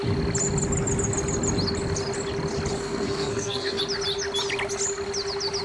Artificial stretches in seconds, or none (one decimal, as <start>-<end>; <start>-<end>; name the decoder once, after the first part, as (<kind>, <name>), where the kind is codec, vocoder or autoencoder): 2.8-3.8 (codec, SNAC)